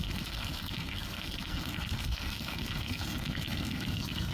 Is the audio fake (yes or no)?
yes